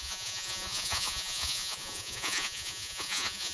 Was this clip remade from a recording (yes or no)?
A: yes